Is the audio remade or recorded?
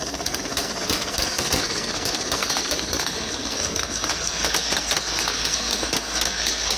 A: remade